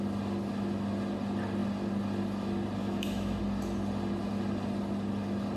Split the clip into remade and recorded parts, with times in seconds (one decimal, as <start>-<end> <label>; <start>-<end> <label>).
0.0-2.8 recorded; 2.8-3.4 remade; 3.4-5.6 recorded